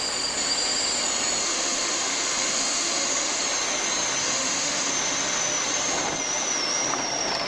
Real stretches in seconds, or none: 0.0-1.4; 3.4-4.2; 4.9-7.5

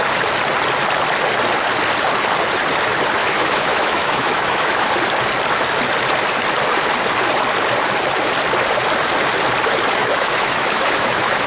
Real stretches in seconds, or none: 0.0-3.2; 4.9-10.0

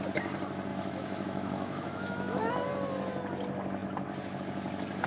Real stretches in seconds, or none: 0.0-0.7; 2.5-5.1

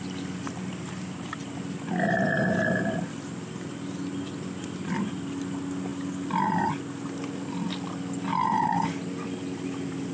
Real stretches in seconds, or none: 0.0-10.1

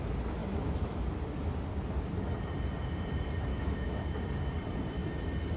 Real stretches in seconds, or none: 0.0-0.4; 1.0-3.5; 4.2-5.6